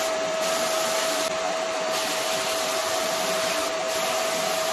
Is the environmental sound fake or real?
fake